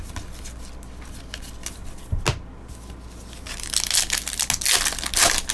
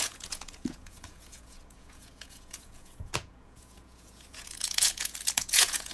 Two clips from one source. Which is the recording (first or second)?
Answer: first